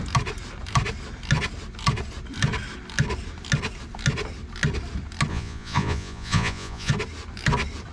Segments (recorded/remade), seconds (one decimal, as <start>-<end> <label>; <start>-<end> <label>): 0.0-5.3 recorded; 5.3-6.9 remade; 6.9-7.9 recorded